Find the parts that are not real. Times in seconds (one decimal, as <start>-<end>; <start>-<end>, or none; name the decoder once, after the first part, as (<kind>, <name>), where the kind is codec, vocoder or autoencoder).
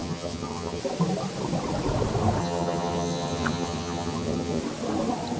0.0-0.8 (vocoder, HiFi-GAN); 2.4-4.6